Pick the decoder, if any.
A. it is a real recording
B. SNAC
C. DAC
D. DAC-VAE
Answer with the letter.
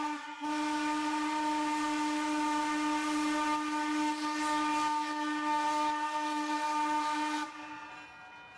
A